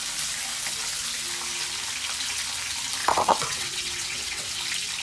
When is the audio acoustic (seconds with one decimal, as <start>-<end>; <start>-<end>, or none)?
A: 0.0-3.0; 4.6-5.0